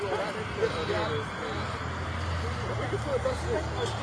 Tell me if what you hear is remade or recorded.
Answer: recorded